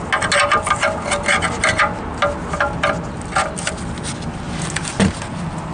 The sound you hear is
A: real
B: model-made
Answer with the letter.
A